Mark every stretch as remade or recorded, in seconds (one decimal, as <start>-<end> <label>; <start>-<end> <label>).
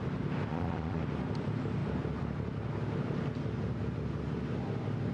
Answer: 0.0-0.5 recorded; 0.5-1.0 remade; 1.0-5.1 recorded